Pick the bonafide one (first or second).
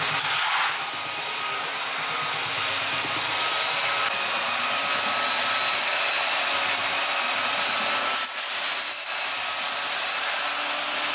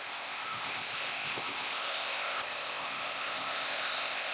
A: first